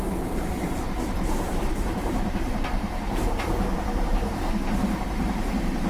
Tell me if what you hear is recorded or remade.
remade